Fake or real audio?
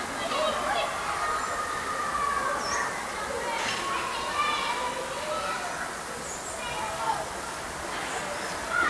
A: real